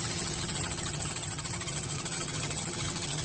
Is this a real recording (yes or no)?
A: no